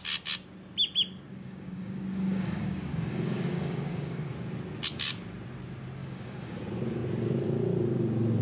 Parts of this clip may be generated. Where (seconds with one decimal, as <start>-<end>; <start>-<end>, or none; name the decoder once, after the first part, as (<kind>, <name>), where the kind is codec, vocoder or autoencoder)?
1.3-4.2 (codec, DAC); 6.0-6.6